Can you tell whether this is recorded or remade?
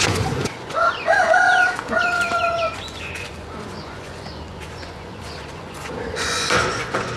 remade